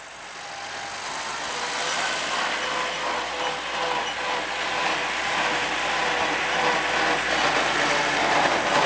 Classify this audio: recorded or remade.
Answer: recorded